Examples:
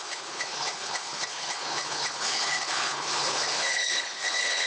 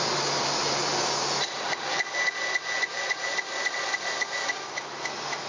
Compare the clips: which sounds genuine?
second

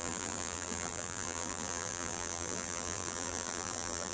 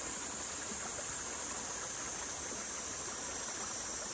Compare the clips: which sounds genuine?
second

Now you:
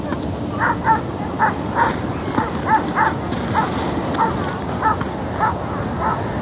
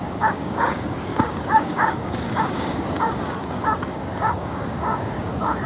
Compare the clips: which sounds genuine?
first